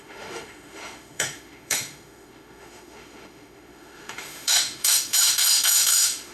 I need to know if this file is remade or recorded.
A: remade